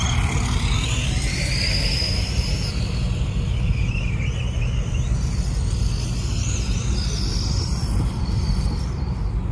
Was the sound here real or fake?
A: real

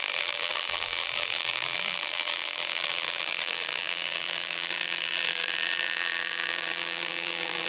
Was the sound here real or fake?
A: fake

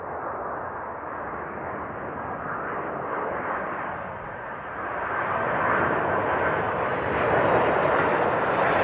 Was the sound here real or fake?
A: real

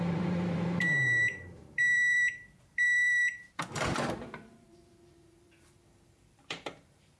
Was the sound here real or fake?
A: fake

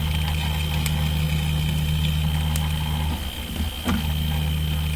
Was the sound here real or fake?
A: real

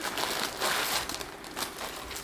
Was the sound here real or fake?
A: real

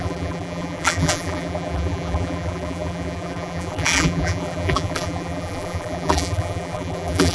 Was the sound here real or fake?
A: fake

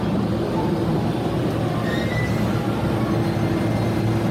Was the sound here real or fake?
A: real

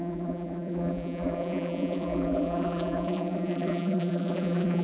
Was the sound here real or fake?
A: fake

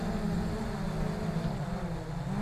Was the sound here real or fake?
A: real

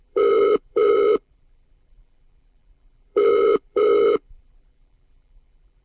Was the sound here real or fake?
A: fake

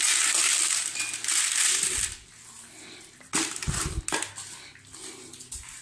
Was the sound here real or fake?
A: real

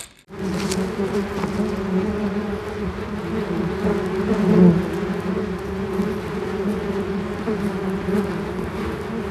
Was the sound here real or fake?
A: real